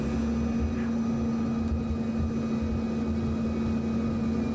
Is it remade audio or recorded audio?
recorded